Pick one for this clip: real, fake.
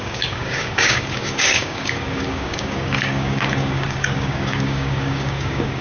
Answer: fake